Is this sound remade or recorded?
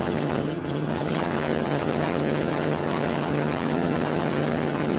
remade